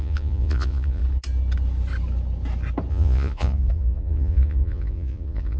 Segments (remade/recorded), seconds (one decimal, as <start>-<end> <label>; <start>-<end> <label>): 0.0-1.0 remade; 1.0-2.9 recorded; 2.9-5.6 remade